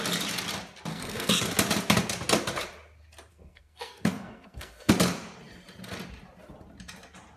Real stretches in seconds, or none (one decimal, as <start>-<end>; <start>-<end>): 0.0-0.9; 1.5-3.3; 4.9-7.4